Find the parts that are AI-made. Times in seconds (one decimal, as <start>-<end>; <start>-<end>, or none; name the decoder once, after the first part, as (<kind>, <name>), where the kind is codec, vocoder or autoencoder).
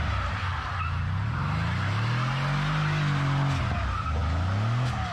none